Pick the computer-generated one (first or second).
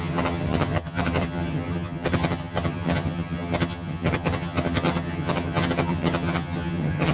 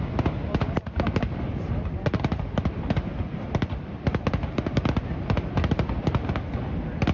first